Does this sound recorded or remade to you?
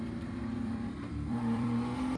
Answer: remade